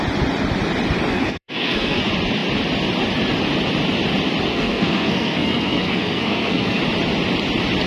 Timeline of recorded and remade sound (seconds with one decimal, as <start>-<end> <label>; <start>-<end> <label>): 0.0-1.1 recorded; 1.1-2.0 remade; 2.0-4.5 recorded; 4.5-6.8 remade; 6.8-7.9 recorded